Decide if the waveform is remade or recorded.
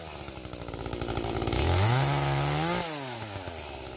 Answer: recorded